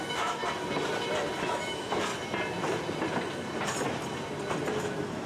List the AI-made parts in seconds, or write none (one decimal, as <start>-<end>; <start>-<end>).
0.0-0.4; 1.4-2.1; 4.8-5.3